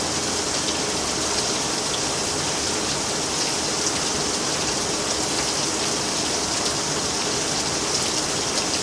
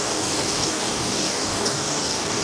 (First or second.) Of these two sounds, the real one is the first